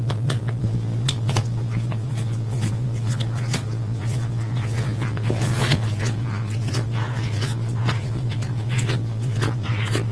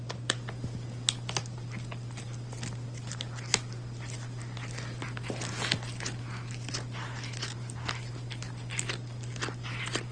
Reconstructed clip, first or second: first